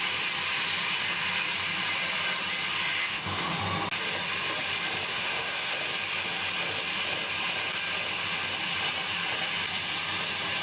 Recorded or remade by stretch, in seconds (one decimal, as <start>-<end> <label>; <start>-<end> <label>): 0.0-3.0 recorded; 3.0-3.6 remade; 3.6-5.1 recorded; 5.1-5.7 remade; 5.7-10.6 recorded